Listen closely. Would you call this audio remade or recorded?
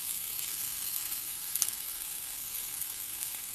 remade